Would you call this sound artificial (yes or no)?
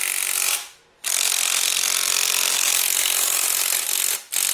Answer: no